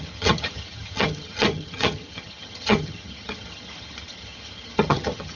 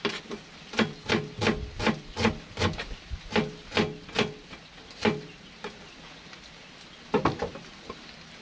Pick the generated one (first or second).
first